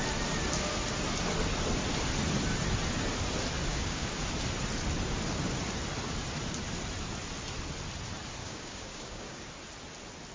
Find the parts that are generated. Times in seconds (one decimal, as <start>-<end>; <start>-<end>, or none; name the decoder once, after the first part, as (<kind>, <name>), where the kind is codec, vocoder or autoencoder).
3.7-4.2 (codec, DAC); 8.4-9.5